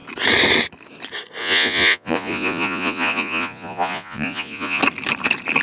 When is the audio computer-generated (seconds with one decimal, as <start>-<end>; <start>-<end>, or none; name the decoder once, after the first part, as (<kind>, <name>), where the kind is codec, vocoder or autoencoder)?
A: 1.4-4.8 (vocoder, Vocos)